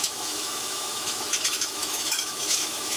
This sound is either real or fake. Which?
fake